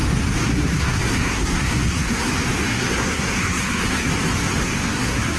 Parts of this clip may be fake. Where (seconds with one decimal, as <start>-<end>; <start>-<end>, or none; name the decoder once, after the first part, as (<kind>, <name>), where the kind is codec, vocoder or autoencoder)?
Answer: 0.5-2.3 (codec, SNAC); 2.7-4.1; 4.6-5.4